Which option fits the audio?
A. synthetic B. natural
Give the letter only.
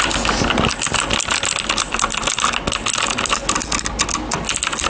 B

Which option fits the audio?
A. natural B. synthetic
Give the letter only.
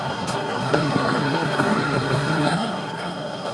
B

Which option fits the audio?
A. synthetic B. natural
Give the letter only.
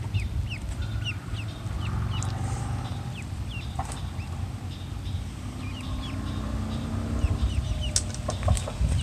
B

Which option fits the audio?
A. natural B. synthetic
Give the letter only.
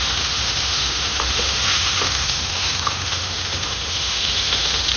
B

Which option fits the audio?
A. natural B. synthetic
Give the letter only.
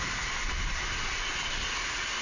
A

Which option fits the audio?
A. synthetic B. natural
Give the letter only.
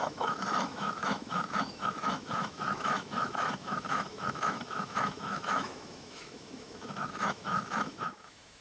A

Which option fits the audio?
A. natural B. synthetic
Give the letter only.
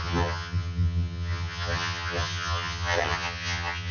B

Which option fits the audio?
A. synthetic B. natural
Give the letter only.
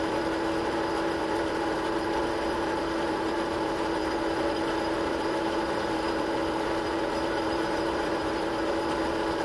A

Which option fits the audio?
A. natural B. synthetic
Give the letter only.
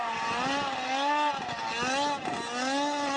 A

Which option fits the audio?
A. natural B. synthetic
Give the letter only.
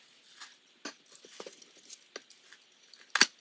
A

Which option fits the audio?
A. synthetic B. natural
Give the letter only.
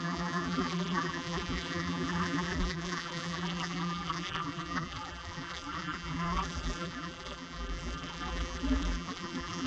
A